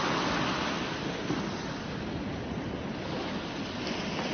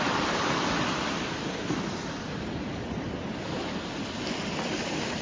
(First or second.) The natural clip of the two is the first